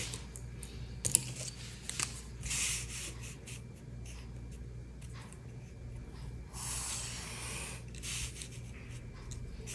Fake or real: real